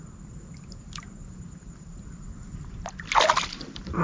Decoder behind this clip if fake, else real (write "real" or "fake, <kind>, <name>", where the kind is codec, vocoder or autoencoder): real